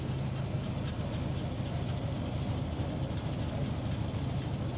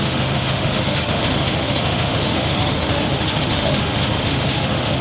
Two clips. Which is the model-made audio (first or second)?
second